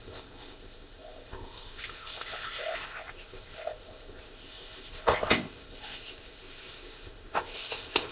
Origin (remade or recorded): remade